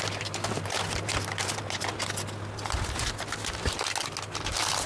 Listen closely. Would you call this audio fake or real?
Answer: real